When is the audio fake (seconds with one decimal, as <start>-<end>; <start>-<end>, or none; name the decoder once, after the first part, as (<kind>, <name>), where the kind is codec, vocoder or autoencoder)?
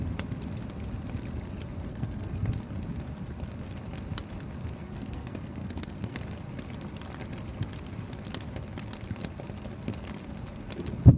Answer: 1.9-2.5 (codec, SNAC); 4.8-6.2